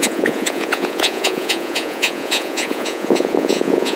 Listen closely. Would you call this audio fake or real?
fake